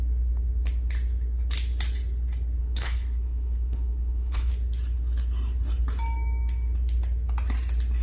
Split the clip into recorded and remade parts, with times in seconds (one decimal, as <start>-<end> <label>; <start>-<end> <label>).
0.0-2.6 recorded; 2.6-4.5 remade; 4.5-8.0 recorded